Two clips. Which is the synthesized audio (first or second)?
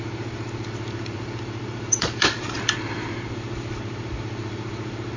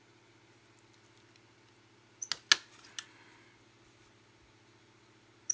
first